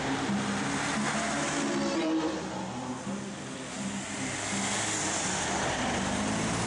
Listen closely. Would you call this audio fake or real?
real